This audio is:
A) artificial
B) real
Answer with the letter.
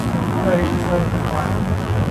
A